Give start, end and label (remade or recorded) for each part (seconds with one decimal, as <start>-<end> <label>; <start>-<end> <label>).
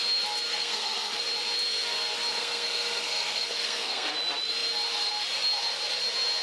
0.0-0.5 recorded; 0.5-1.2 remade; 1.2-2.3 recorded; 2.3-4.1 remade; 4.1-6.4 recorded